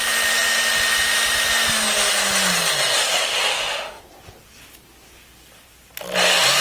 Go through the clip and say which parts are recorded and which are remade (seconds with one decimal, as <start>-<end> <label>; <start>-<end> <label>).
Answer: 0.0-3.5 recorded; 3.5-4.0 remade; 4.0-6.6 recorded